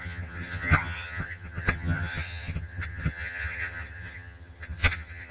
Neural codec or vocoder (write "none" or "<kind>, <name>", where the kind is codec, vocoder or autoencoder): vocoder, HiFi-GAN